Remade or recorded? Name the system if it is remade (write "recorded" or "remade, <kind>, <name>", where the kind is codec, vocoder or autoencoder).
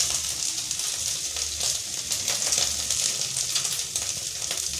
recorded